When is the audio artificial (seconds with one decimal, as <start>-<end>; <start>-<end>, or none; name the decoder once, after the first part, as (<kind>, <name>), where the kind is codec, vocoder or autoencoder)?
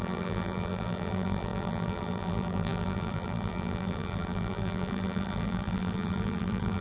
0.0-6.8 (vocoder, BigVGAN v2)